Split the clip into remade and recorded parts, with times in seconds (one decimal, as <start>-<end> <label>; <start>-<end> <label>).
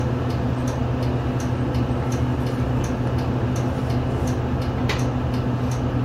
0.0-6.0 recorded